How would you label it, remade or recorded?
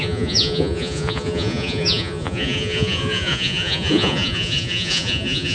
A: remade